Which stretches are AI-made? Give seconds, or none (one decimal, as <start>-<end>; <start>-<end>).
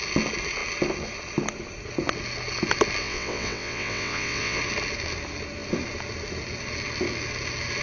3.0-4.6